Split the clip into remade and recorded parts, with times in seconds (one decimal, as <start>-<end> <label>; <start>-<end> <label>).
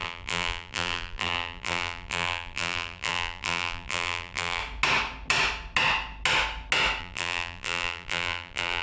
0.0-4.6 remade; 4.6-7.0 recorded; 7.0-8.8 remade